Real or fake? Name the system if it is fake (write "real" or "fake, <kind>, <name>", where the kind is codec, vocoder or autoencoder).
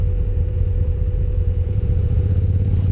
fake, vocoder, Vocos